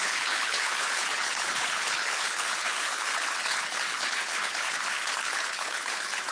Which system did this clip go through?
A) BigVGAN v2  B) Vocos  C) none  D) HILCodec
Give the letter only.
D